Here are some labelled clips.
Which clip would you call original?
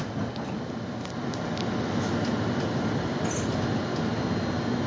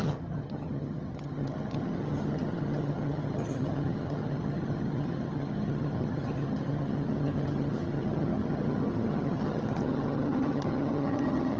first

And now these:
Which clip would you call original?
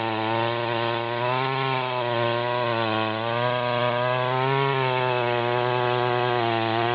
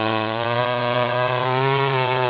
first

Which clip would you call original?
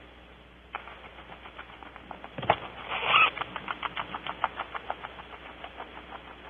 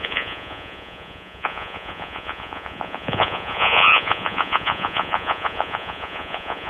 first